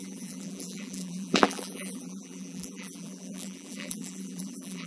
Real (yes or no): no